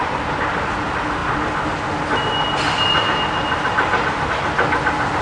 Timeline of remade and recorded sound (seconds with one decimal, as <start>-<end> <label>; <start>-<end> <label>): 0.0-5.2 recorded